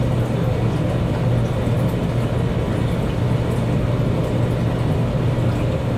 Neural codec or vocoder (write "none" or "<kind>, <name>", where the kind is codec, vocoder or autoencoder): none